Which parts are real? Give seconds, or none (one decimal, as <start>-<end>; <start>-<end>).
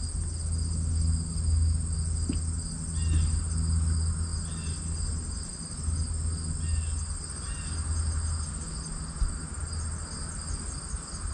0.0-11.3